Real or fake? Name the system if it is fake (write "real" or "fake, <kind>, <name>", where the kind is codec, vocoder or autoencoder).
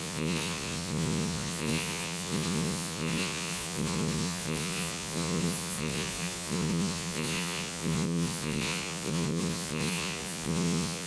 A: fake, vocoder, Vocos